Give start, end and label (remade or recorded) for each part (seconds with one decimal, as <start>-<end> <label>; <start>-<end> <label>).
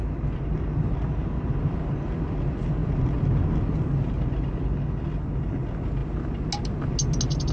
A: 0.0-7.5 recorded